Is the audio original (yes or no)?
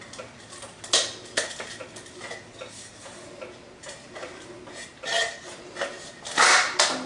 yes